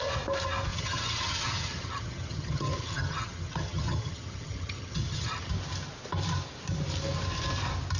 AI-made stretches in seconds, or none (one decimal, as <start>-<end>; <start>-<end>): 0.7-5.5